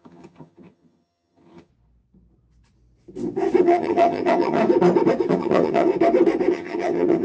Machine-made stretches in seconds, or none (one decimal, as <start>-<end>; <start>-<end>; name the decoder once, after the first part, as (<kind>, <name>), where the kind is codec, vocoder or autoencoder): 0.0-1.7 (vocoder, HiFi-GAN); 3.6-4.6; 5.3-5.9; 6.5-7.2